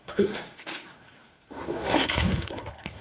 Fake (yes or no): yes